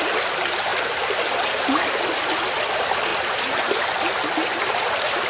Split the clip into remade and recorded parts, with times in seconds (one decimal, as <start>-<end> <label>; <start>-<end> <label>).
0.0-5.3 remade